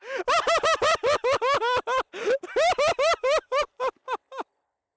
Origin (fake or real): real